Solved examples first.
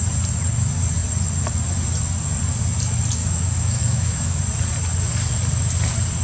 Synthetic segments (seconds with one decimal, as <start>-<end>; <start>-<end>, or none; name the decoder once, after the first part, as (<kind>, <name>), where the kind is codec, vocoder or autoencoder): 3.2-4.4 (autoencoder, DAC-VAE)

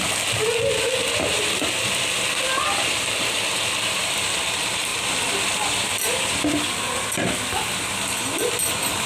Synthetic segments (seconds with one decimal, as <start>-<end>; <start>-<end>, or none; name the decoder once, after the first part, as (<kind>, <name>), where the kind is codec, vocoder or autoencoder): none

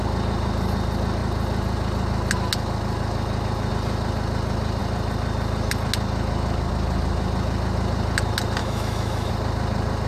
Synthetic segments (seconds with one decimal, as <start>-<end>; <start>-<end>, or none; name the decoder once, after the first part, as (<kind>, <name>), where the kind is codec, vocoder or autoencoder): 8.6-9.3 (autoencoder, DAC-VAE)

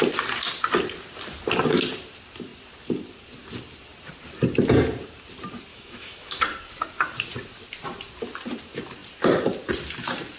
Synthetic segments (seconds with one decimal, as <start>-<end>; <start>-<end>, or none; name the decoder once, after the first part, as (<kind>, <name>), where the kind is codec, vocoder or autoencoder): 5.7-6.4 (autoencoder, DAC-VAE)

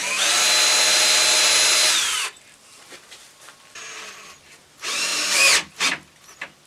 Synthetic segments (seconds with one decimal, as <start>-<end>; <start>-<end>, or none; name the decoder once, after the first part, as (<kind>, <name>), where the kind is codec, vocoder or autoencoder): none

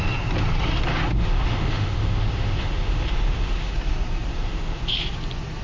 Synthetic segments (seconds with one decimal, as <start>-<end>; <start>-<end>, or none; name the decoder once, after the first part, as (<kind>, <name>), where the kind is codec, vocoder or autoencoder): 0.9-3.7 (autoencoder, DAC-VAE); 4.3-4.8

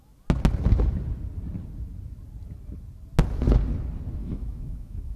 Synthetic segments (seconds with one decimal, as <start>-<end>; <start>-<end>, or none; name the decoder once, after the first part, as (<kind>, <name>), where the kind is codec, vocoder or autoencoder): 4.2-5.2 (autoencoder, DAC-VAE)